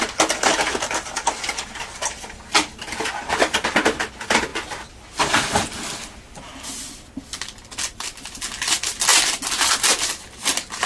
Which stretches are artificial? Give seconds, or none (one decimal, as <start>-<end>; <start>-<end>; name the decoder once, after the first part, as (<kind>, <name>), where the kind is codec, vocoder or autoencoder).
none